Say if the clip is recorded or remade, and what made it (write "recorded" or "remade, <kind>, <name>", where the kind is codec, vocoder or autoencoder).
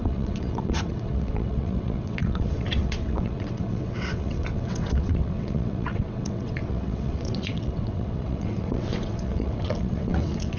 remade, vocoder, WaveNeXt